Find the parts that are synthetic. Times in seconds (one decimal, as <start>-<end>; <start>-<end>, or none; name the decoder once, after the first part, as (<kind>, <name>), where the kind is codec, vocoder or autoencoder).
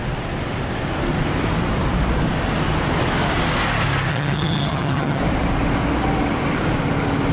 4.1-5.2 (vocoder, HiFi-GAN)